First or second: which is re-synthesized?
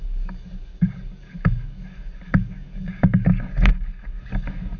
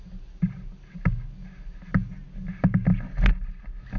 first